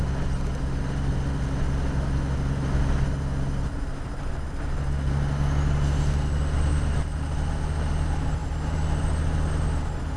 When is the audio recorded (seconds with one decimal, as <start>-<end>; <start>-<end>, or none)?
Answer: 0.0-10.2